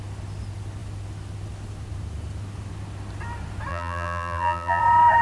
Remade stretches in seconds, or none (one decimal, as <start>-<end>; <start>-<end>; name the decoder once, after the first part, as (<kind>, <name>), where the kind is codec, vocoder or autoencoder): 3.7-4.8 (vocoder, BigVGAN v2)